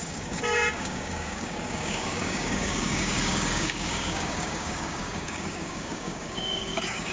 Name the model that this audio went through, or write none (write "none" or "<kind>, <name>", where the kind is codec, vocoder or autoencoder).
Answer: codec, DAC